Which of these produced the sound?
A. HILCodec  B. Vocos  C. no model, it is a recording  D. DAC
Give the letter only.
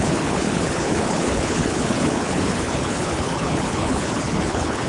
A